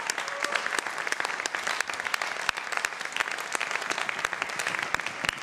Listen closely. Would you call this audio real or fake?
real